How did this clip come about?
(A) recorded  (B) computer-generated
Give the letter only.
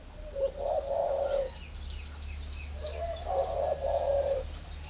A